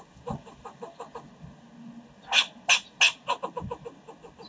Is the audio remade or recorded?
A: recorded